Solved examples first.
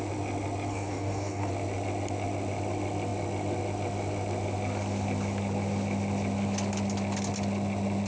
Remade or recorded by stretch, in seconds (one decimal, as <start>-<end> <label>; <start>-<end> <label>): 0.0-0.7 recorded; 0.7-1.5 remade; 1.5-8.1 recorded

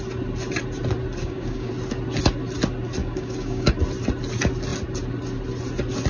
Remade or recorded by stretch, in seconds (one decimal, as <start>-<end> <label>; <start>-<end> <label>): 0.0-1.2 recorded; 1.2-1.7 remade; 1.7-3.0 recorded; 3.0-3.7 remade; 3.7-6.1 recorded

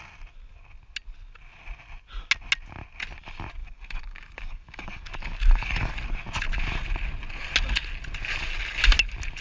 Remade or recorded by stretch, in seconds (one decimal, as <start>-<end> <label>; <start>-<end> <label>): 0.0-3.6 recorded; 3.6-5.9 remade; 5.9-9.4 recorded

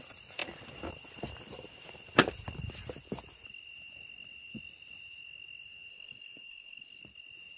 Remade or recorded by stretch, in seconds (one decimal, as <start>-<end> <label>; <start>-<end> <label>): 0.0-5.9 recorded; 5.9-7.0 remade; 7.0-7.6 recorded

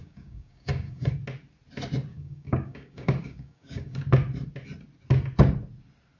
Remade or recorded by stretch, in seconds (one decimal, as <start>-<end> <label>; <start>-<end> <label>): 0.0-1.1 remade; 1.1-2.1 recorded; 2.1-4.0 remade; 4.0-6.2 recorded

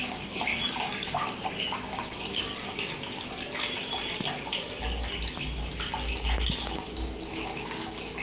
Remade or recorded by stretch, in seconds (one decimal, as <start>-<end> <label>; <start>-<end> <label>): 0.0-2.5 remade; 2.5-6.6 recorded; 6.6-8.2 remade

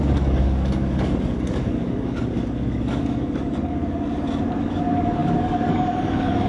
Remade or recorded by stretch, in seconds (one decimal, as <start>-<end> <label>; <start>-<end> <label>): 0.0-3.8 remade; 3.8-4.6 recorded; 4.6-6.5 remade